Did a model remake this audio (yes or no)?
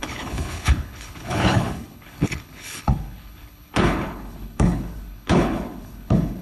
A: yes